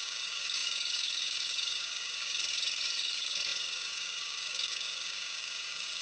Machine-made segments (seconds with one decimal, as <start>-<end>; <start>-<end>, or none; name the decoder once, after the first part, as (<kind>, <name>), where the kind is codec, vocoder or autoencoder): 0.0-6.0 (codec, DAC)